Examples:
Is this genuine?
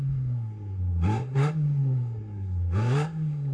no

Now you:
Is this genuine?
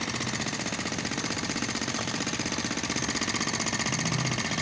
yes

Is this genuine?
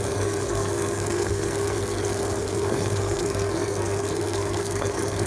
no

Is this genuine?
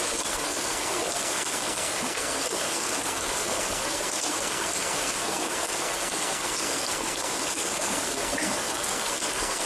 no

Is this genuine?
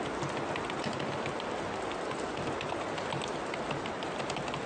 yes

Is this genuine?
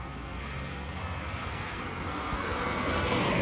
no